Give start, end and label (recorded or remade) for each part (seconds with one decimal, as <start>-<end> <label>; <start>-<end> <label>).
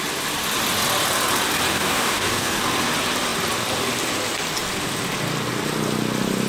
0.0-1.7 recorded; 1.7-2.6 remade; 2.6-6.5 recorded